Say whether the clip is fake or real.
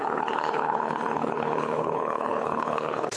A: fake